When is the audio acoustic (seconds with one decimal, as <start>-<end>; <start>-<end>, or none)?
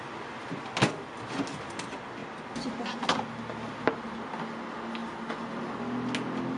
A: 0.0-6.6